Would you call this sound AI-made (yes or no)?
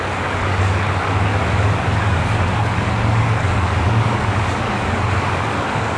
yes